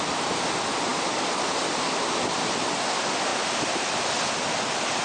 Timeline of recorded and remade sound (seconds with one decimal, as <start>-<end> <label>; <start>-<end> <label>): 0.0-0.9 recorded; 0.9-1.7 remade; 1.7-3.3 recorded; 3.3-3.9 remade; 3.9-5.0 recorded

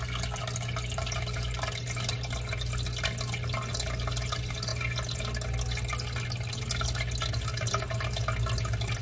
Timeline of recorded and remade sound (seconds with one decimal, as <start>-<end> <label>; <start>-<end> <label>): 0.0-9.0 recorded

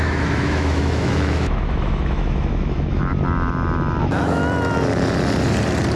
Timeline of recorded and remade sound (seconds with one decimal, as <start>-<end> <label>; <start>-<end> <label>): 0.0-3.1 remade; 3.1-4.0 recorded; 4.0-4.4 remade; 4.4-6.0 recorded

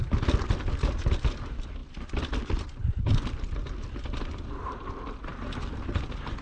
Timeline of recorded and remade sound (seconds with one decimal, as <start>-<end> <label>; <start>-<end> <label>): 0.0-6.4 recorded

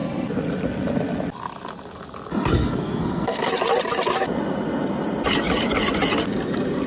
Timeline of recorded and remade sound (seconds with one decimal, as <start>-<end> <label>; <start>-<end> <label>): 0.0-2.5 recorded; 2.5-3.5 remade; 3.5-6.9 recorded

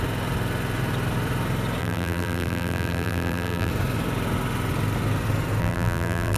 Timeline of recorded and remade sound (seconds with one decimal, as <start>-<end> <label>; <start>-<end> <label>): 0.0-1.8 recorded; 1.8-3.7 remade; 3.7-5.6 recorded; 5.6-6.4 remade

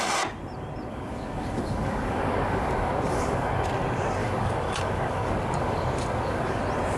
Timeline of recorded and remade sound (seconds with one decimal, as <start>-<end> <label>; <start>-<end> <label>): 0.0-0.9 recorded; 0.9-3.7 remade; 3.7-4.2 recorded; 4.2-6.6 remade; 6.6-7.0 recorded

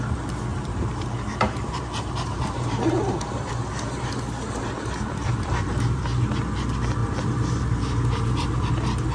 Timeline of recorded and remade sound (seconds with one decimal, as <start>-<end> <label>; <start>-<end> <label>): 0.0-0.5 recorded; 0.5-3.5 remade; 3.5-5.2 recorded; 5.2-6.0 remade; 6.0-7.0 recorded; 7.0-8.7 remade; 8.7-9.1 recorded